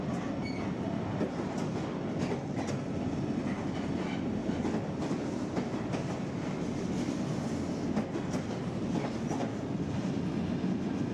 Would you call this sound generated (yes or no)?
no